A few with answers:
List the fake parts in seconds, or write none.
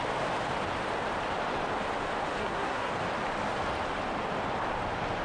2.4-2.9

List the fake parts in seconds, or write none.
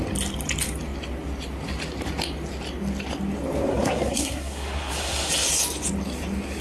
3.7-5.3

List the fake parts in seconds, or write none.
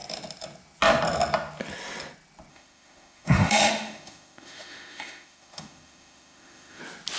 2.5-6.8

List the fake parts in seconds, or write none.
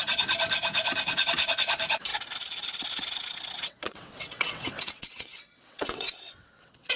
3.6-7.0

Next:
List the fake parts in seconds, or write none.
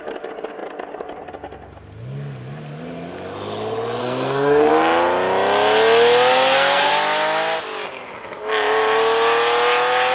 4.0-4.7; 6.3-6.9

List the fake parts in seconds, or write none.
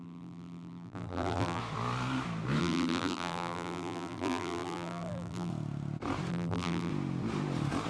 0.0-1.6; 2.6-5.5; 6.3-6.9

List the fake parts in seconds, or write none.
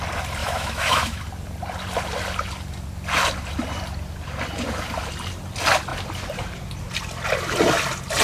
0.4-1.2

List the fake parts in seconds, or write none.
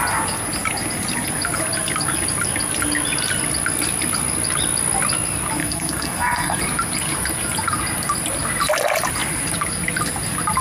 5.6-6.6